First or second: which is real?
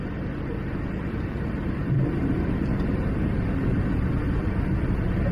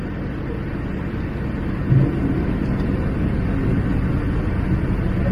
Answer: second